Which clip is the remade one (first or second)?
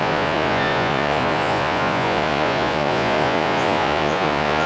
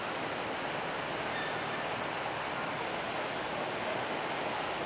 first